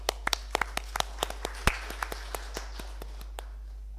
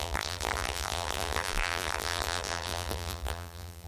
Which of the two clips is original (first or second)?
first